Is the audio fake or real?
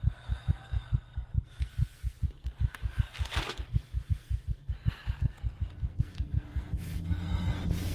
fake